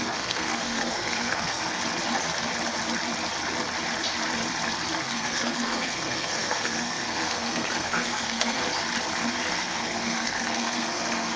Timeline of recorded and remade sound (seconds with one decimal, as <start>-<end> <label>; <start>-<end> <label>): 0.0-1.8 remade; 1.8-5.0 recorded; 5.0-8.6 remade; 8.6-9.5 recorded; 9.5-11.4 remade